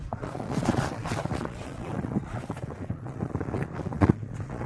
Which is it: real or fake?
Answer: fake